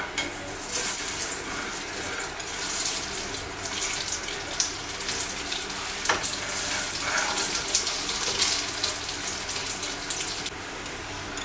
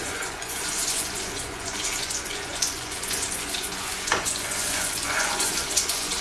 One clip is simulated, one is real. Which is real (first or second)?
first